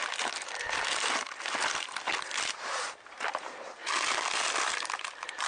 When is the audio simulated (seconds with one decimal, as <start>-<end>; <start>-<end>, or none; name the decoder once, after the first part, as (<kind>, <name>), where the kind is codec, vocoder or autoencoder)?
none